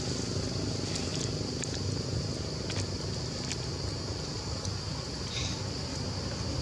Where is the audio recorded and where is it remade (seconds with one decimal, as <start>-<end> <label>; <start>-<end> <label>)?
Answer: 0.0-6.6 recorded